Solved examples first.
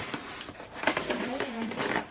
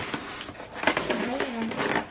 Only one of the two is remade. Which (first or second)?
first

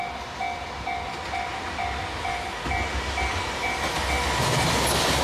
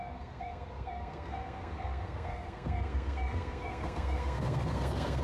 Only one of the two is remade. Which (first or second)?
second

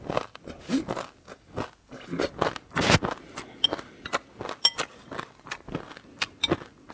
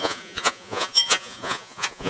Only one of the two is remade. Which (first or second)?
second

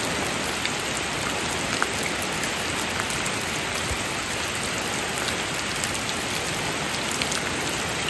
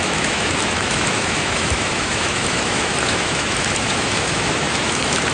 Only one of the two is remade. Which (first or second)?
second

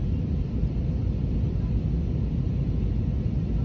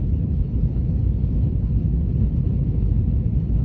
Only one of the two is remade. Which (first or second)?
second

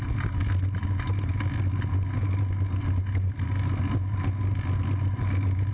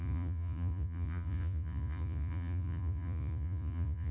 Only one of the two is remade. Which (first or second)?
second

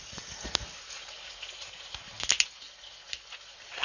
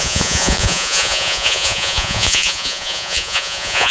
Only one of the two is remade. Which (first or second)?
second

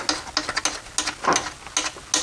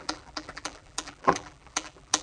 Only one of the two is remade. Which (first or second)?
second